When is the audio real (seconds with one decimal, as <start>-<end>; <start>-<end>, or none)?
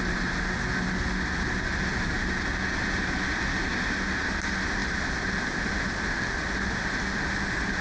0.0-7.8